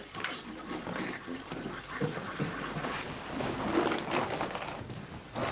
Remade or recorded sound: recorded